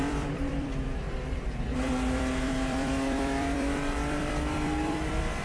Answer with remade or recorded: remade